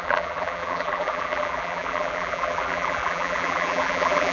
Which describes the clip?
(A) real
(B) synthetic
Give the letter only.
B